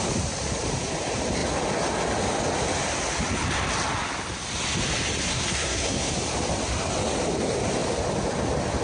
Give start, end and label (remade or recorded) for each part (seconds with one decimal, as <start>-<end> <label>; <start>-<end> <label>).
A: 0.0-5.3 recorded; 5.3-6.1 remade; 6.1-8.8 recorded